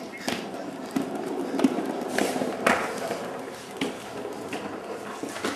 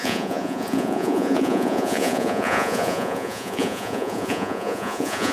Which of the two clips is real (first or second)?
first